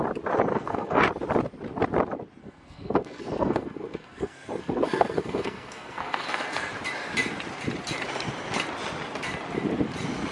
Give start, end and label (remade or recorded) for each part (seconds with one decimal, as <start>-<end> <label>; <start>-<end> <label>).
0.0-0.5 recorded; 0.5-1.0 remade; 1.0-2.4 recorded; 2.4-6.7 remade; 6.7-10.3 recorded